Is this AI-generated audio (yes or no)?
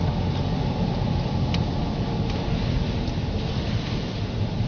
no